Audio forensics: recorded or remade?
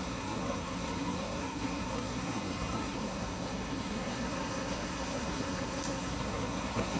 remade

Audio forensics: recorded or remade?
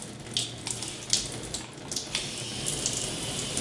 recorded